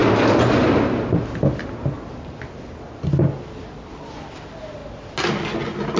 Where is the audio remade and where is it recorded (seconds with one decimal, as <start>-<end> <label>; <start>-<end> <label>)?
0.0-6.0 recorded